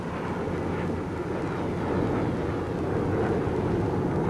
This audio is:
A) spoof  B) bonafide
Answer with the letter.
B